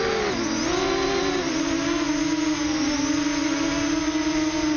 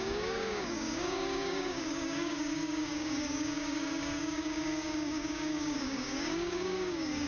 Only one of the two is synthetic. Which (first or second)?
second